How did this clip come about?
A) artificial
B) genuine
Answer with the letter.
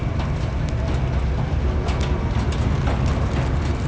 B